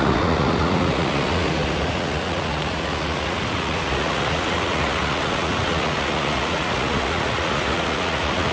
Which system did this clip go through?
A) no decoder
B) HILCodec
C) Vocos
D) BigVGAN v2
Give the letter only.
C